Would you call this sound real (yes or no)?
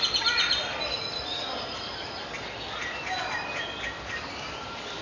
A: yes